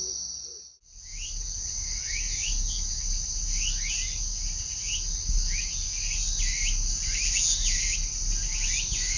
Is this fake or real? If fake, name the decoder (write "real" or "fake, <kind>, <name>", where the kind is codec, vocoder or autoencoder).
real